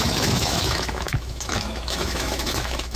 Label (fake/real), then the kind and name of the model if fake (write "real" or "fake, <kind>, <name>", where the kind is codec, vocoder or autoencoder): fake, autoencoder, DAC-VAE